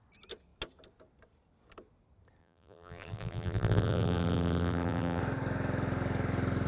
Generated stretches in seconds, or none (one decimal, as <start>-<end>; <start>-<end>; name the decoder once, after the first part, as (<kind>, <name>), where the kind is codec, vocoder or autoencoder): 2.4-5.2 (vocoder, BigVGAN v2)